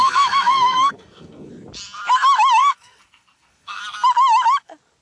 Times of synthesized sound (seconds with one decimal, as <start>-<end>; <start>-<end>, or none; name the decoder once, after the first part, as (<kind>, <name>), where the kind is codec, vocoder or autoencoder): 0.0-1.5 (codec, SNAC); 2.6-3.8